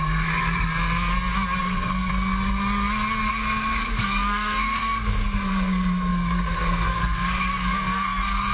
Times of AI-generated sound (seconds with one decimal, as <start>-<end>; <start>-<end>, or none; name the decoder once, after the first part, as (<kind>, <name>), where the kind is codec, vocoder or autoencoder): 0.0-0.7 (codec, SNAC); 1.6-2.1; 3.3-8.5